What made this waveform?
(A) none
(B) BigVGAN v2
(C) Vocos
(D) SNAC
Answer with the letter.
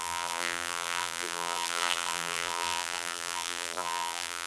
B